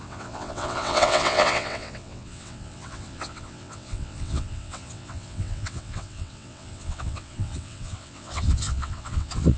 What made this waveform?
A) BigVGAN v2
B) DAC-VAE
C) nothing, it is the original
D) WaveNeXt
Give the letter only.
D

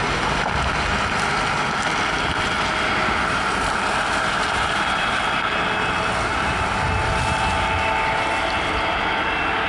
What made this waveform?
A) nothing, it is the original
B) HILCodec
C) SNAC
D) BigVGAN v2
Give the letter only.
A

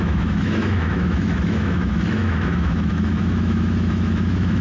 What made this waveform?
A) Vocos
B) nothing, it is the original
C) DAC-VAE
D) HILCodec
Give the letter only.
C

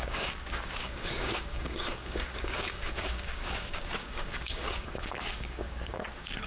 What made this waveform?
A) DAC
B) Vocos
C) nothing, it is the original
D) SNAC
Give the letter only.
A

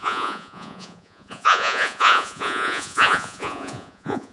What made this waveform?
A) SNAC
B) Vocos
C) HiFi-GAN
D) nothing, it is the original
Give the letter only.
B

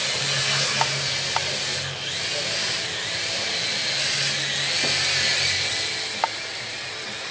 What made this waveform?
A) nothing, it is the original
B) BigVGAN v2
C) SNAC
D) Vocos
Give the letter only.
A